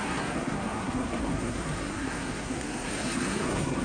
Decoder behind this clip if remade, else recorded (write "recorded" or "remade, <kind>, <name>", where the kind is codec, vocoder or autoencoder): remade, codec, SNAC